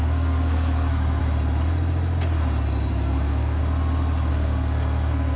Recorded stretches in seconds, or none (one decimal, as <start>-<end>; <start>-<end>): 1.2-2.9; 3.6-4.3